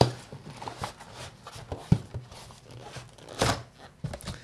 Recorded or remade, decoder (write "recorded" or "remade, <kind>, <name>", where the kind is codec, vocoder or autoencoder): recorded